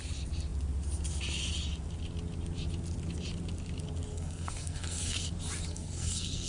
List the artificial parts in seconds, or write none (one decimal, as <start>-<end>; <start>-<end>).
4.1-5.3; 5.7-6.5